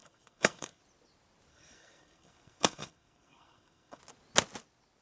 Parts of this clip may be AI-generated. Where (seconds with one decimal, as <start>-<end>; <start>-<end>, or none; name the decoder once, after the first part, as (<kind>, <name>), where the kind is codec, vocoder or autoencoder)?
0.0-0.8 (codec, SNAC); 1.5-4.0